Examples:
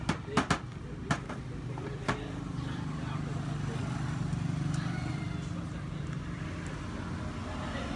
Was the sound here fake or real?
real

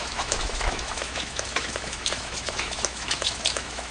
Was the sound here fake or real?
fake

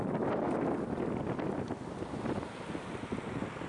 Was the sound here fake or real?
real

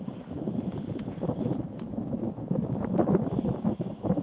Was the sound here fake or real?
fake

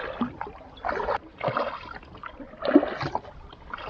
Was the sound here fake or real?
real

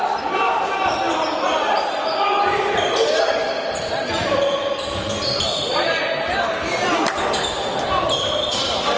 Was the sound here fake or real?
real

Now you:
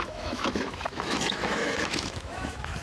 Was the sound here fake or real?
fake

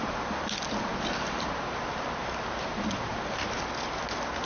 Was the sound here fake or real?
real